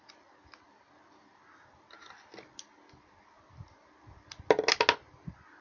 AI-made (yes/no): no